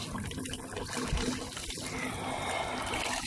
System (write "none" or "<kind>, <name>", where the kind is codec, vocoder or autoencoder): none